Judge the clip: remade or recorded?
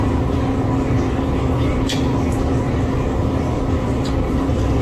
recorded